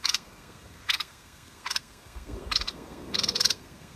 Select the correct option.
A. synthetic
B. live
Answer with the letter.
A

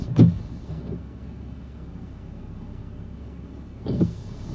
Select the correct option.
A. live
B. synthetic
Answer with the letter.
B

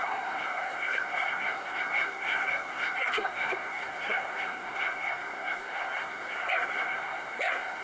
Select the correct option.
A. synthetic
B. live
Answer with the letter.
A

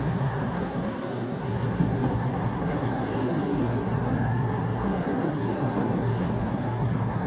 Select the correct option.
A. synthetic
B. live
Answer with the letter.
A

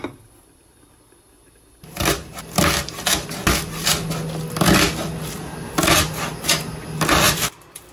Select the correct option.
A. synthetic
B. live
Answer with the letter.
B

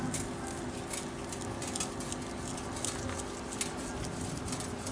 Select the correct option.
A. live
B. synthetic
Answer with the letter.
A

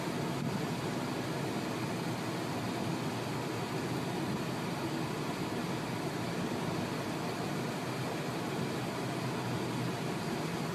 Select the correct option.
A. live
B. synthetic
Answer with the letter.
A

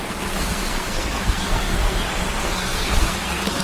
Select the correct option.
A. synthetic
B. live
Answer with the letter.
A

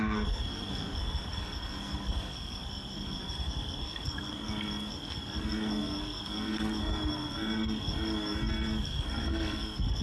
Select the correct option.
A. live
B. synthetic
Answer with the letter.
B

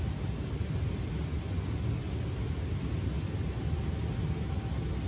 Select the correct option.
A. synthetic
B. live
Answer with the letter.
B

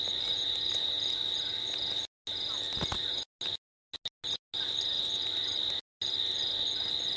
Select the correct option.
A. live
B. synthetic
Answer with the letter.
A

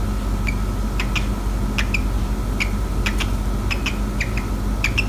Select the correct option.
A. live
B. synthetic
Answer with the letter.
A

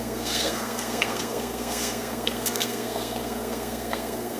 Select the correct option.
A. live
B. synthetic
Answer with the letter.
B